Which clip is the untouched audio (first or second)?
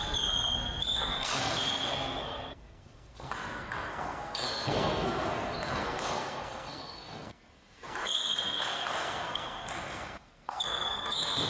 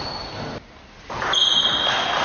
second